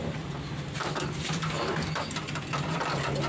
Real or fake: real